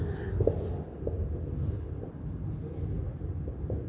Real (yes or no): yes